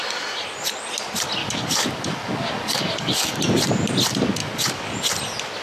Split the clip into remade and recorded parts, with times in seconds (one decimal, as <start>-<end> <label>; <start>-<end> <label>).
0.0-1.4 recorded; 1.4-3.4 remade; 3.4-4.4 recorded; 4.4-4.9 remade; 4.9-5.6 recorded